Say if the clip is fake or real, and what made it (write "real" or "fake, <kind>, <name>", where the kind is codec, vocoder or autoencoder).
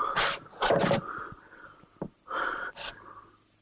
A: real